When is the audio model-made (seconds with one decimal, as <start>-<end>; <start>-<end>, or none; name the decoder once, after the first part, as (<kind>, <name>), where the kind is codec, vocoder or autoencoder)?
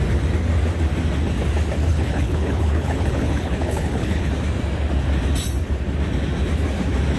1.9-4.3 (codec, HILCodec)